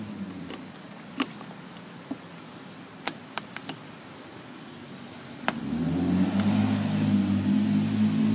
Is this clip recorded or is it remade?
recorded